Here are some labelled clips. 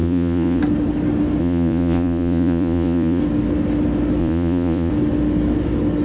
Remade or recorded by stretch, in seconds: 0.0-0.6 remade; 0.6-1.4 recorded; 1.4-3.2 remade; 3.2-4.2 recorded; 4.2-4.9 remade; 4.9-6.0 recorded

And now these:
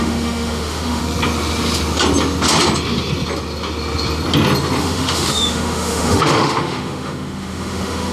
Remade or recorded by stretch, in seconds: 0.0-1.0 remade; 1.0-4.8 recorded; 4.8-8.1 remade

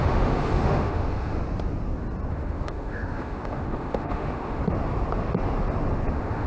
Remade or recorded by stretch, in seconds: 0.0-1.4 remade; 1.4-2.3 recorded; 2.3-4.6 remade; 4.6-6.1 recorded; 6.1-6.5 remade